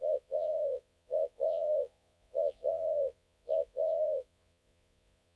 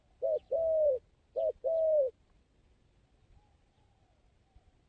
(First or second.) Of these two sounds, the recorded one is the second